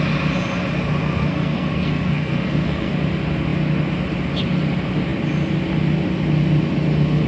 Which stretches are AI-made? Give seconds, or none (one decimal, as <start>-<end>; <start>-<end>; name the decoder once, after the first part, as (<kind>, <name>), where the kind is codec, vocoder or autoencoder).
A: 1.0-2.9 (codec, SNAC)